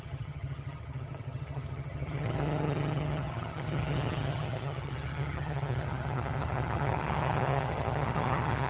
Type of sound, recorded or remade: remade